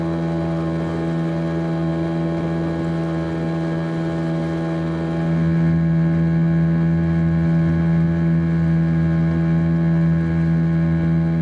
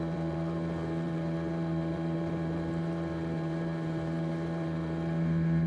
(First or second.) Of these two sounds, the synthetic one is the second